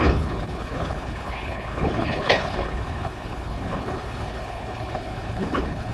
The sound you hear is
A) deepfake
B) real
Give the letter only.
A